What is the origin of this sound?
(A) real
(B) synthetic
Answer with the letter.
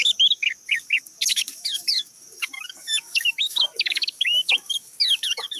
B